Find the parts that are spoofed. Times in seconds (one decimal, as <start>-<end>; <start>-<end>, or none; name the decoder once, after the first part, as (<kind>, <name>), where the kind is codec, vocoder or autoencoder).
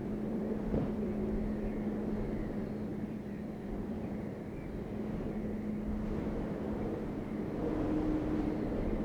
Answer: 0.0-1.2 (vocoder, BigVGAN v2); 2.9-4.3